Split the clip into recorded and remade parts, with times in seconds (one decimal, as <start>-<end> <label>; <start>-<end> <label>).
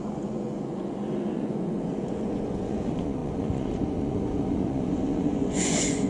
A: 0.0-6.1 remade